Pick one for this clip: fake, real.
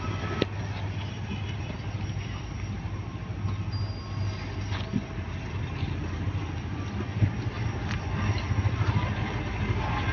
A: real